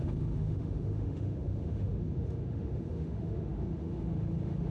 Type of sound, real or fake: fake